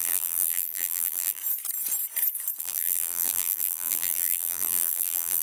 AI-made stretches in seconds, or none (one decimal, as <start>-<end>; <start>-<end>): 0.0-1.4; 2.6-5.4